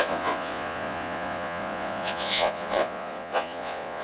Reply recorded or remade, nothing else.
remade